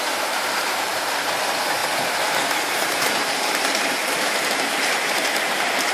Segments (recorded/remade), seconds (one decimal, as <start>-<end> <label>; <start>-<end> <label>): 0.0-5.9 remade